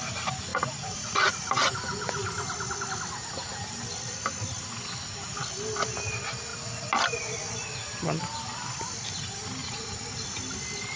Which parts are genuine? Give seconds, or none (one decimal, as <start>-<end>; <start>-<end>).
0.0-0.5; 1.3-9.6; 10.4-11.0